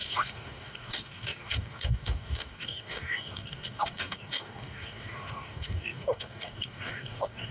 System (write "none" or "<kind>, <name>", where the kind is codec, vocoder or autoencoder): codec, DAC